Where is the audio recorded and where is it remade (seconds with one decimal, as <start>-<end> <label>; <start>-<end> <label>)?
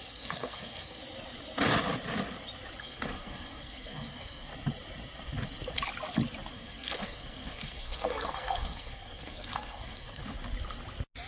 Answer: 0.0-1.0 remade; 1.0-2.8 recorded; 2.8-4.5 remade; 4.5-6.5 recorded; 6.5-10.2 remade; 10.2-11.3 recorded